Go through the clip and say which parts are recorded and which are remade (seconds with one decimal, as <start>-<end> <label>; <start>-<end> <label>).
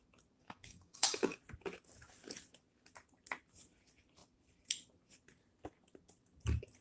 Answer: 0.0-0.4 recorded; 0.4-1.4 remade; 1.4-6.8 recorded